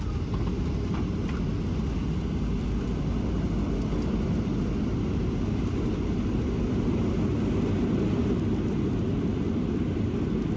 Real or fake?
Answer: real